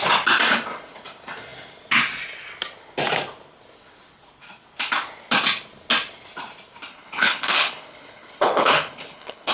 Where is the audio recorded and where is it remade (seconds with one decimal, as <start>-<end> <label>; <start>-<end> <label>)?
0.0-6.9 recorded; 6.9-9.5 remade